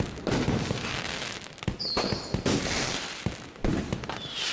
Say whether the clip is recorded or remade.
recorded